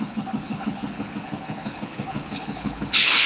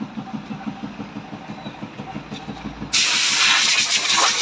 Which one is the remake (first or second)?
first